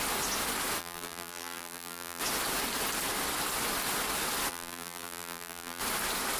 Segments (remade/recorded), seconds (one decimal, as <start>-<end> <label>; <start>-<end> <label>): 0.0-0.8 recorded; 0.8-2.2 remade; 2.2-4.5 recorded; 4.5-5.8 remade; 5.8-6.4 recorded